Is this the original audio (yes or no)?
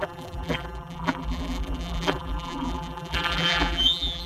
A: no